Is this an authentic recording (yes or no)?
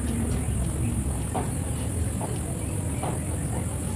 yes